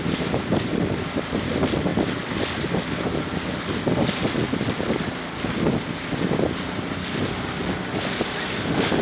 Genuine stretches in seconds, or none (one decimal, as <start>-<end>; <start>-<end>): 0.0-9.0